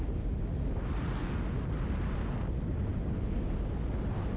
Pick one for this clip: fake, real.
real